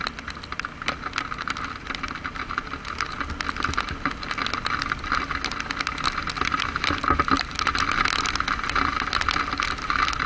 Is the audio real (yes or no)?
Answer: yes